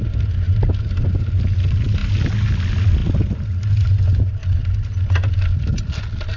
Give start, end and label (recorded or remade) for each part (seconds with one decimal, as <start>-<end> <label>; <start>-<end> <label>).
0.0-6.4 recorded